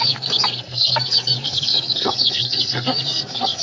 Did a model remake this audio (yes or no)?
yes